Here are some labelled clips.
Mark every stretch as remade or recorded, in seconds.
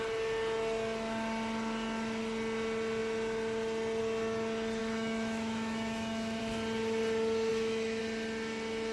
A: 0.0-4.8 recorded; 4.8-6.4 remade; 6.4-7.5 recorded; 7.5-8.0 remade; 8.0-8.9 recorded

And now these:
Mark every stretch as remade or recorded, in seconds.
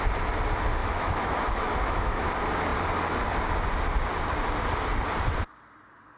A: 0.0-0.8 recorded; 0.8-2.3 remade; 2.3-6.2 recorded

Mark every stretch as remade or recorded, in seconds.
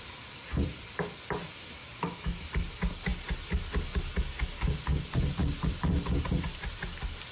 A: 0.0-1.8 recorded; 1.8-2.5 remade; 2.5-7.3 recorded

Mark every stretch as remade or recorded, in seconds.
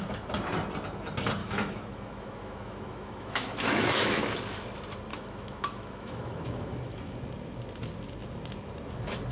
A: 0.0-1.4 recorded; 1.4-4.2 remade; 4.2-5.1 recorded; 5.1-7.2 remade; 7.2-9.3 recorded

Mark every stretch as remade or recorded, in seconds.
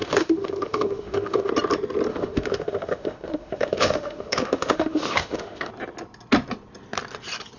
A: 0.0-1.5 remade; 1.5-2.1 recorded; 2.1-5.7 remade; 5.7-7.6 recorded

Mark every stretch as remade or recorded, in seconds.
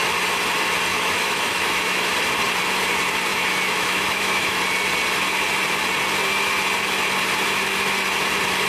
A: 0.0-0.9 recorded; 0.9-2.1 remade; 2.1-3.3 recorded; 3.3-4.6 remade; 4.6-8.7 recorded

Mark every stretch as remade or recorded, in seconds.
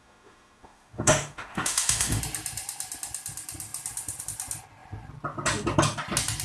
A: 0.0-2.2 remade; 2.2-6.4 recorded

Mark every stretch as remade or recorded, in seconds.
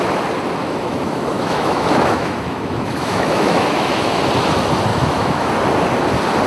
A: 0.0-0.6 recorded; 0.6-4.2 remade; 4.2-4.9 recorded; 4.9-5.5 remade; 5.5-6.5 recorded